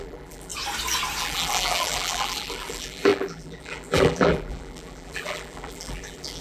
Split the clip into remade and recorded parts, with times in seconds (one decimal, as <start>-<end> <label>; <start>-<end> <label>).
0.0-0.5 remade; 0.5-1.2 recorded; 1.2-6.4 remade